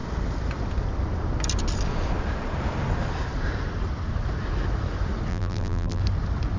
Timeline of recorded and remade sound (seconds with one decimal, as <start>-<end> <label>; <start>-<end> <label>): 0.0-5.3 recorded; 5.3-6.0 remade; 6.0-6.6 recorded